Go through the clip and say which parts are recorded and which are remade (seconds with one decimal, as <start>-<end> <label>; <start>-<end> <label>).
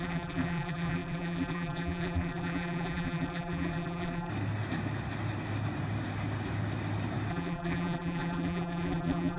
0.0-4.3 remade; 4.3-7.3 recorded; 7.3-9.4 remade